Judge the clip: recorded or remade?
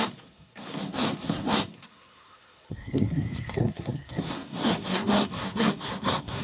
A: remade